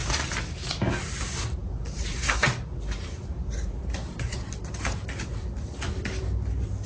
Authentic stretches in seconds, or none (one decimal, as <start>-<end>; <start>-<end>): 0.0-1.6; 5.7-6.9